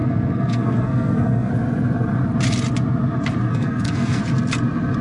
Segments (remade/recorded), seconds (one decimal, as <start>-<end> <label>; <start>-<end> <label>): 0.0-1.5 remade; 1.5-3.5 recorded; 3.5-4.2 remade; 4.2-5.0 recorded